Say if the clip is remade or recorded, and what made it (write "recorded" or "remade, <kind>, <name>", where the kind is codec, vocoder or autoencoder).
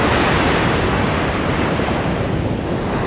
recorded